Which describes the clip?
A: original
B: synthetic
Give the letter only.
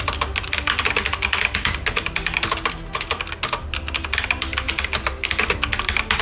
A